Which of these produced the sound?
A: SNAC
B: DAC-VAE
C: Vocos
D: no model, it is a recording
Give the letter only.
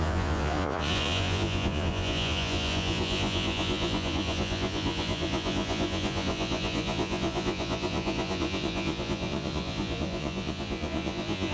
C